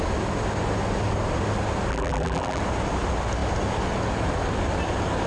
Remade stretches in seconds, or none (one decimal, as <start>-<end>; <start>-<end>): 1.9-2.6